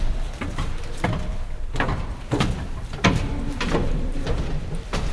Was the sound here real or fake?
fake